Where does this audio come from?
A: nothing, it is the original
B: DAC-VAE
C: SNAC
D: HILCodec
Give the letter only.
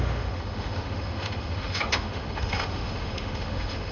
B